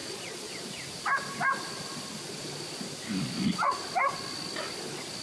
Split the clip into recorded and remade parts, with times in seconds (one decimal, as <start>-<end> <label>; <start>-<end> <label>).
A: 0.0-0.7 remade; 0.7-5.2 recorded